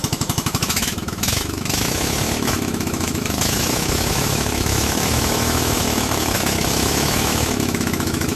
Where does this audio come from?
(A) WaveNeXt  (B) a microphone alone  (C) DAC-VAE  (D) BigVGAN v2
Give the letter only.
C